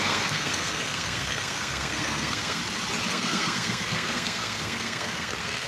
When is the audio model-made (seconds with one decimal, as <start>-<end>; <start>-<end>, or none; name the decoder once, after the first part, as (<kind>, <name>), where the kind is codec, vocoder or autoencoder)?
0.0-2.6 (codec, SNAC); 3.1-5.7